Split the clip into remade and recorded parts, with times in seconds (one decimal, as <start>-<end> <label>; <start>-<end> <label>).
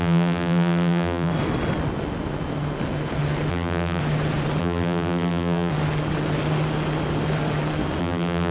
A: 0.0-1.3 remade; 1.3-3.5 recorded; 3.5-4.0 remade; 4.0-4.6 recorded; 4.6-5.7 remade; 5.7-8.0 recorded; 8.0-8.5 remade